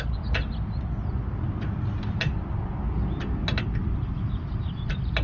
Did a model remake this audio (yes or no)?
no